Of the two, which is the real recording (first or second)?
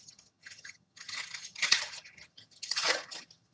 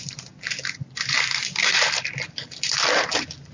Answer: second